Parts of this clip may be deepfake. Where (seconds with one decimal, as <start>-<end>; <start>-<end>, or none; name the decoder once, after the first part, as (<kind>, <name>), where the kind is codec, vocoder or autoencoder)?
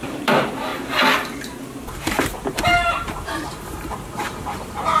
0.0-0.7 (vocoder, BigVGAN v2); 2.0-5.0